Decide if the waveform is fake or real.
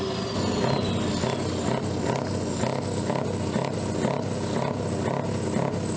real